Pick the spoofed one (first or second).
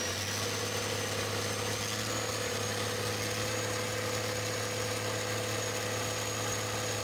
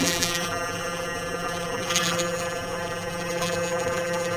second